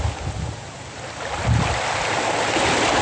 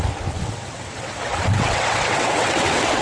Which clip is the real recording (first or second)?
first